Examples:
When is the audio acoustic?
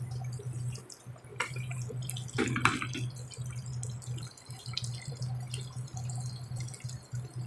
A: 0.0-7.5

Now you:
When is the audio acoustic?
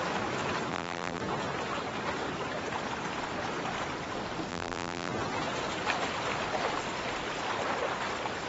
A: 0.0-0.7; 1.2-4.5; 5.1-8.5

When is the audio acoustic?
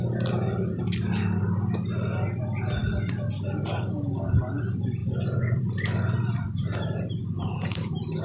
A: 0.0-5.0; 5.6-8.2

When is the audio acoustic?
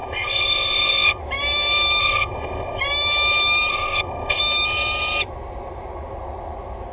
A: 1.2-2.0; 2.8-3.7; 4.4-6.9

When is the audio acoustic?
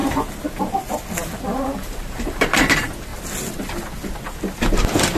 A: 0.0-1.2; 2.6-5.2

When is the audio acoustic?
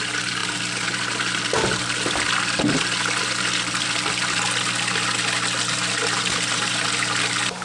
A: 0.0-7.6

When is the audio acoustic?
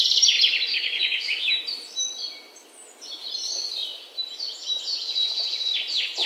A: 0.0-0.7; 1.6-6.3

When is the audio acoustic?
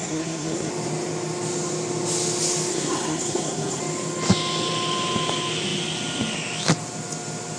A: 0.7-2.7; 3.8-7.6